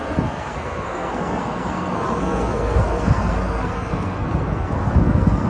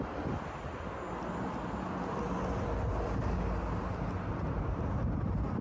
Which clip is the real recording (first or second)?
second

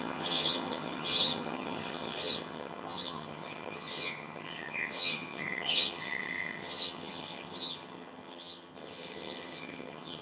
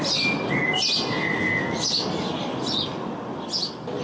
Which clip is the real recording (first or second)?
second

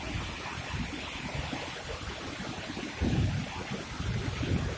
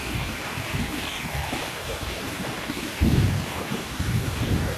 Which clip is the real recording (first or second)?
first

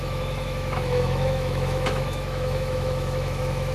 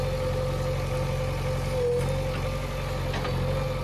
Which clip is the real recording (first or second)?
second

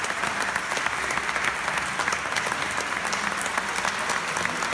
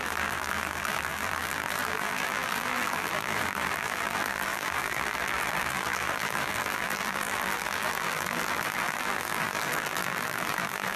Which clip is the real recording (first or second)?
first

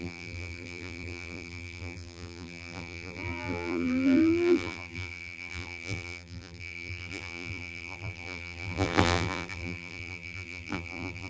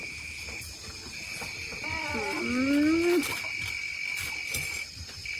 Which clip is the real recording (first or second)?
second